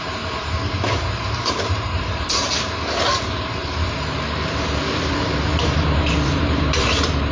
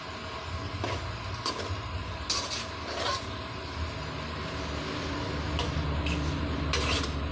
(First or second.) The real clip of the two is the second